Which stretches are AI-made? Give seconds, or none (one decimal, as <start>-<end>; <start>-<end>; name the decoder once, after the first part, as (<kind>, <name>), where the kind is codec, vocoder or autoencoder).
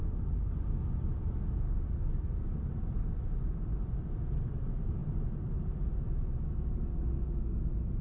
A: none